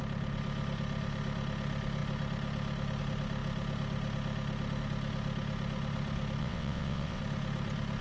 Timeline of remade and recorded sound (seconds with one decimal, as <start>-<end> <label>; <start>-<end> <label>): 0.0-6.4 recorded; 6.4-7.2 remade; 7.2-8.0 recorded

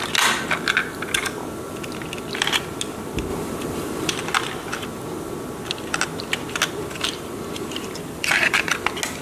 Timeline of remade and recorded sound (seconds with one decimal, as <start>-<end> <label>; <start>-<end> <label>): 0.0-3.3 recorded; 3.3-4.1 remade; 4.1-6.8 recorded; 6.8-8.7 remade; 8.7-9.2 recorded